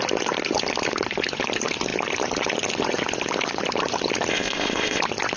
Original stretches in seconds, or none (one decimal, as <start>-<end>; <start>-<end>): 0.0-4.3; 5.0-5.4